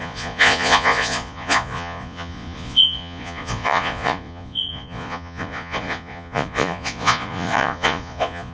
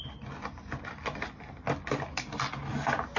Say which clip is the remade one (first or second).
first